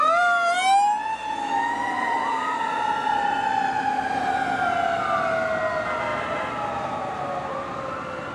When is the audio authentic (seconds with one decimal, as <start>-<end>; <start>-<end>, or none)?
0.0-2.2; 4.2-6.1; 7.9-8.3